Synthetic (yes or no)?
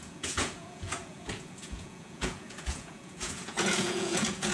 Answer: yes